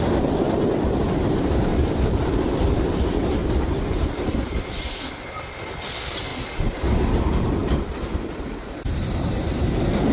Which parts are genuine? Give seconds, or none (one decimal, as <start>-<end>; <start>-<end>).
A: 3.4-4.0; 6.3-7.2